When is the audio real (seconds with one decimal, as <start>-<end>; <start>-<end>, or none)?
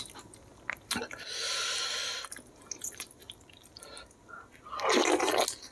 0.0-5.7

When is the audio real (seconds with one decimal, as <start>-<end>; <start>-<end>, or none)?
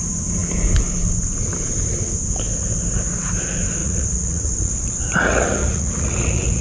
0.0-3.8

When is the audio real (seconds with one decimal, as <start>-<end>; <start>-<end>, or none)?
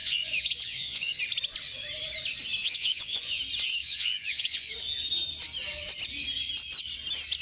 1.2-2.6; 3.4-3.8; 4.7-7.4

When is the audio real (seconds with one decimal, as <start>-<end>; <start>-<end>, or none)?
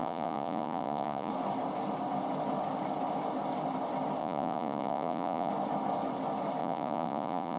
1.3-4.2; 5.5-6.6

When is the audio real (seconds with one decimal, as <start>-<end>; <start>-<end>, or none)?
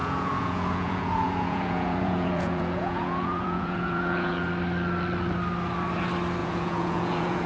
4.5-6.4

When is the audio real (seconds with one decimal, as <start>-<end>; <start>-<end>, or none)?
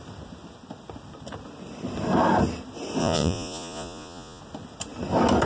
0.0-3.0; 4.4-5.5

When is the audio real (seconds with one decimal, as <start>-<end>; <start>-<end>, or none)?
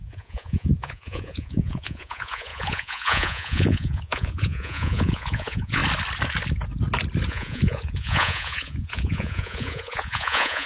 5.8-7.3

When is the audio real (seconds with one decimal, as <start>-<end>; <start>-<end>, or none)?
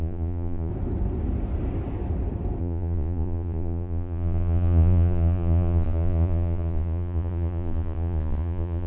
0.7-2.6